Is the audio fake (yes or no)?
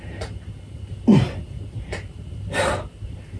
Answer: yes